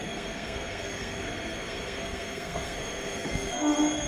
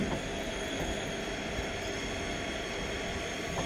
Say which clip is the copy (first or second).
first